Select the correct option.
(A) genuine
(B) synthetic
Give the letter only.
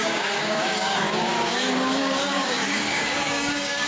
B